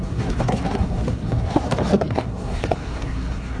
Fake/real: fake